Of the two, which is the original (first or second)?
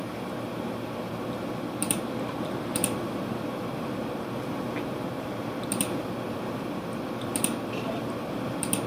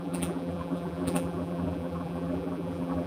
first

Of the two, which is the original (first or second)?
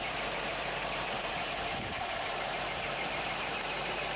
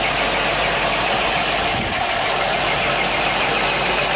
second